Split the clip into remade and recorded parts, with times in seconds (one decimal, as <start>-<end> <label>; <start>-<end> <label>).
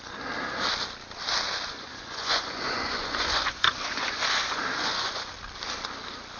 0.0-1.7 recorded; 1.7-5.3 remade; 5.3-6.4 recorded